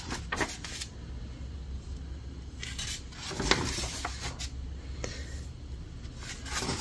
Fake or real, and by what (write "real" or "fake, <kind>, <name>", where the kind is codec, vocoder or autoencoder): real